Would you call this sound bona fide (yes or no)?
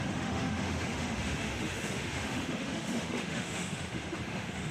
no